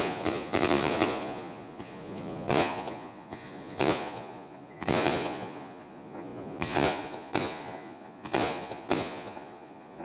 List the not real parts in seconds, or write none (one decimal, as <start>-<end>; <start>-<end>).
0.0-10.0